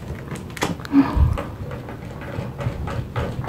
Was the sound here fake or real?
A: real